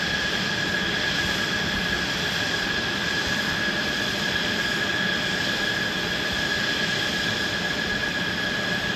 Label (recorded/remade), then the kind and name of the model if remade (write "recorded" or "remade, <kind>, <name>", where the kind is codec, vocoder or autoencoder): remade, vocoder, BigVGAN v2